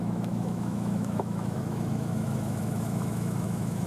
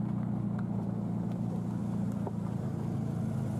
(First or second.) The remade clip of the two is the first